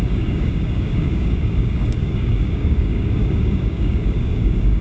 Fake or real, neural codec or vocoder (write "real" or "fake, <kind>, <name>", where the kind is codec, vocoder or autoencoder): fake, codec, DAC